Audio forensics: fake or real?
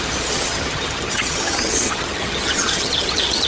fake